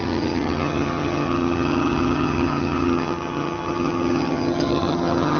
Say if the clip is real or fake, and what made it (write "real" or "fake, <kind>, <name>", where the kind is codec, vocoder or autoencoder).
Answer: fake, vocoder, HiFi-GAN